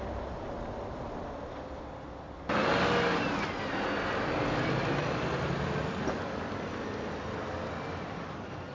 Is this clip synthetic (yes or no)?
no